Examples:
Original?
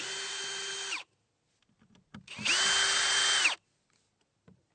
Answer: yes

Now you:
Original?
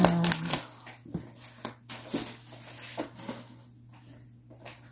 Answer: yes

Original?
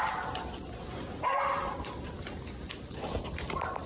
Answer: yes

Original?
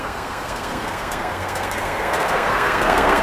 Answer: no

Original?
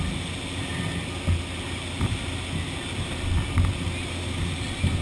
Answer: yes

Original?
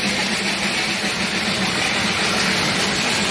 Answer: yes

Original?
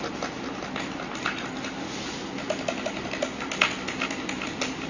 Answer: yes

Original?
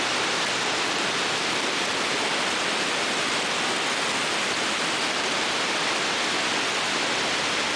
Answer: no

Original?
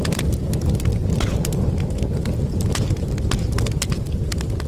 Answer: yes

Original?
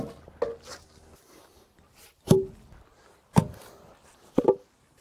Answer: yes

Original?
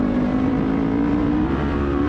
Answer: yes